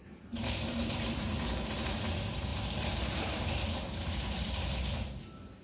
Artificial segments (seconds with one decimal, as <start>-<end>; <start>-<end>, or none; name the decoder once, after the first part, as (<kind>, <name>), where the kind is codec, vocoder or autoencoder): 0.0-2.0 (vocoder, BigVGAN v2); 2.5-3.3